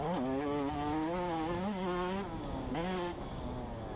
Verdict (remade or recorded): remade